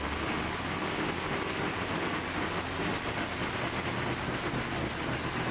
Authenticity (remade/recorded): recorded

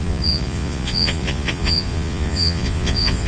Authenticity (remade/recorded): remade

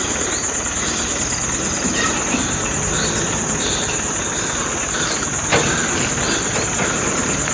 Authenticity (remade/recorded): recorded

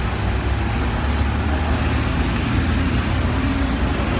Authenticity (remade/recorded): recorded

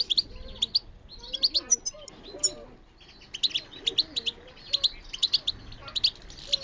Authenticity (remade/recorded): recorded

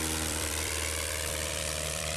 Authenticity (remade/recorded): remade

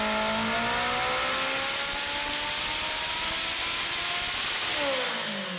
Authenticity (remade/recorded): recorded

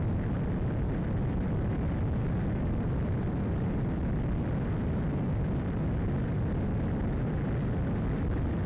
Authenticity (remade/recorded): remade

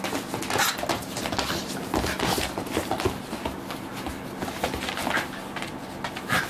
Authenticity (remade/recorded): recorded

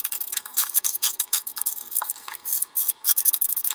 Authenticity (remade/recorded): remade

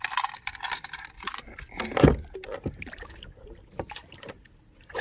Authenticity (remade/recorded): recorded